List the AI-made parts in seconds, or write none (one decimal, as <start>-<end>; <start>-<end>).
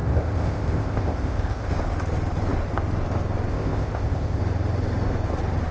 0.0-1.7; 3.5-4.4